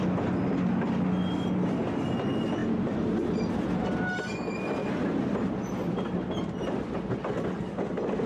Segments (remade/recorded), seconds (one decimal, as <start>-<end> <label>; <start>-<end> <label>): 0.0-4.8 recorded; 4.8-6.9 remade; 6.9-8.3 recorded